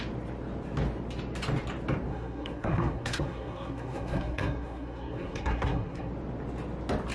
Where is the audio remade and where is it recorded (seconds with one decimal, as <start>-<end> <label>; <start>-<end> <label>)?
0.0-2.1 recorded; 2.1-6.1 remade; 6.1-7.1 recorded